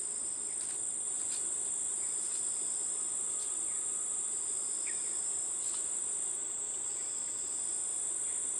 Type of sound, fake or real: real